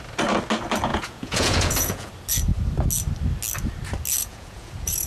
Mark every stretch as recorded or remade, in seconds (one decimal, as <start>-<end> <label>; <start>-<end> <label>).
0.0-0.9 recorded; 0.9-2.1 remade; 2.1-4.2 recorded; 4.2-5.1 remade